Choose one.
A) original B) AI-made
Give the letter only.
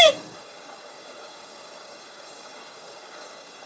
B